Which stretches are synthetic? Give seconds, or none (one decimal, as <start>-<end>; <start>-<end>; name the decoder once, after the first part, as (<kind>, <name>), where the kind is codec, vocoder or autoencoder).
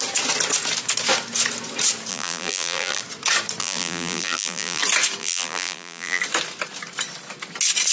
2.1-3.0 (vocoder, BigVGAN v2); 3.6-4.8; 5.2-6.2